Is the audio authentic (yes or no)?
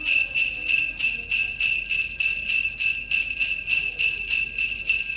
yes